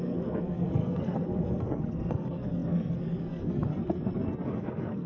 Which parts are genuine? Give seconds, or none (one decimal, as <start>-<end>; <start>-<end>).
none